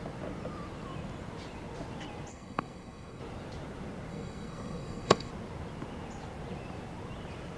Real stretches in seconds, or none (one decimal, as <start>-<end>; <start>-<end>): 0.0-2.3; 3.2-4.1; 5.3-7.6